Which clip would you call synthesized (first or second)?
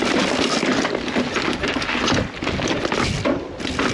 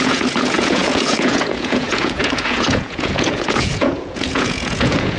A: second